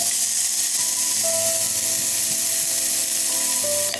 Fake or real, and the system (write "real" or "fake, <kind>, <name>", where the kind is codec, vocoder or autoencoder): real